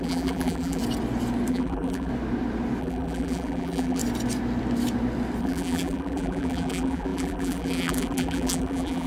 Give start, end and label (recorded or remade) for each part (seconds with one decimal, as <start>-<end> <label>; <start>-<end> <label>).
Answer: 0.0-0.8 remade; 0.8-1.5 recorded; 1.5-2.1 remade; 2.1-2.8 recorded; 2.8-4.0 remade; 4.0-5.4 recorded; 5.4-9.1 remade

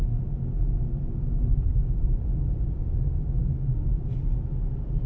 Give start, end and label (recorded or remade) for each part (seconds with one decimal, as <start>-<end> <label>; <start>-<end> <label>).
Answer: 0.0-5.1 recorded

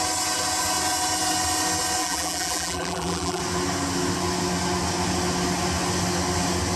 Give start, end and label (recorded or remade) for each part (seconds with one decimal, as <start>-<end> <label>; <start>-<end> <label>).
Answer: 0.0-2.0 recorded; 2.0-3.4 remade; 3.4-6.8 recorded